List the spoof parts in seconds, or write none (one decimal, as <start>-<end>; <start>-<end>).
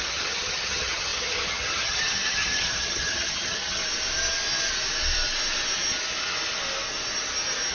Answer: 0.0-3.8